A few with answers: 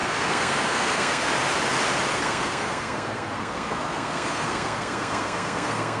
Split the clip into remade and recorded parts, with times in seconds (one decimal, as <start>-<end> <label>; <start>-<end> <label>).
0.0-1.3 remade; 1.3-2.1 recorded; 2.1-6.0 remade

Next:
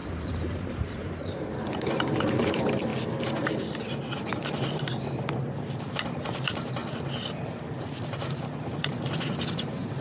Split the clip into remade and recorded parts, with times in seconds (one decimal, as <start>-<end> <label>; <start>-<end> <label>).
0.0-2.9 remade; 2.9-5.9 recorded; 5.9-6.8 remade; 6.8-7.7 recorded; 7.7-10.0 remade

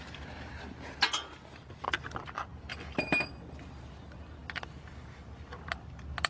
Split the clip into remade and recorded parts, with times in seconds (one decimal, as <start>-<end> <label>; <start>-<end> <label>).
0.0-6.3 recorded

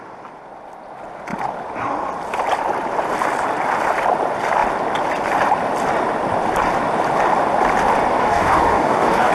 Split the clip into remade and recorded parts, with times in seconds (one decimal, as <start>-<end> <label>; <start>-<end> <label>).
0.0-8.2 recorded; 8.2-9.3 remade

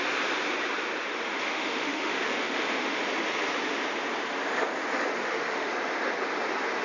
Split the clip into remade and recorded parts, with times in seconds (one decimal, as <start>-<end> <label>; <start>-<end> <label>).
0.0-1.5 recorded; 1.5-3.0 remade; 3.0-5.2 recorded; 5.2-5.7 remade; 5.7-6.8 recorded

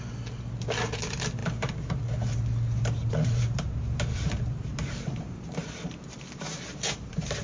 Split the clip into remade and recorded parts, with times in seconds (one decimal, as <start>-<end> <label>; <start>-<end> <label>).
0.0-1.4 recorded; 1.4-2.0 remade; 2.0-3.0 recorded; 3.0-7.4 remade

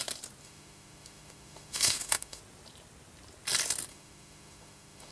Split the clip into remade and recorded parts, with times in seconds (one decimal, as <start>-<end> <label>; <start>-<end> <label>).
0.0-0.4 recorded; 0.4-2.4 remade; 2.4-3.9 recorded; 3.9-5.1 remade